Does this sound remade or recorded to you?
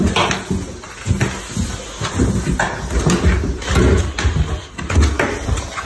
recorded